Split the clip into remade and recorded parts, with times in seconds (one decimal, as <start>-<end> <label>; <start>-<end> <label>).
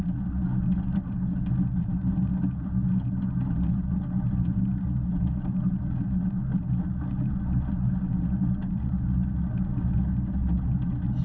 0.0-11.2 recorded